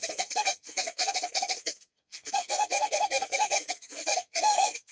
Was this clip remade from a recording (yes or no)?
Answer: yes